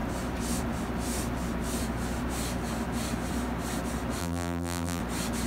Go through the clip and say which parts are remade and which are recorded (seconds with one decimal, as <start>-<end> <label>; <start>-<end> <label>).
0.0-4.2 recorded; 4.2-5.0 remade; 5.0-5.5 recorded